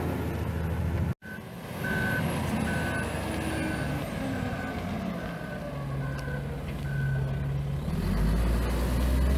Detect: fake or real real